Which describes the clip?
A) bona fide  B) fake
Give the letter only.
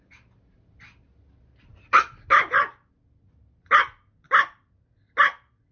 A